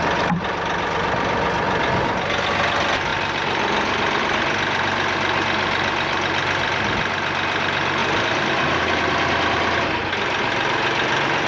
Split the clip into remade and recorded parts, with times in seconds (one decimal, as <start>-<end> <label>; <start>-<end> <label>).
0.0-11.5 recorded